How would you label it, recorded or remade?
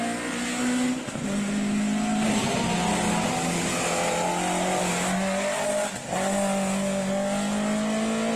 recorded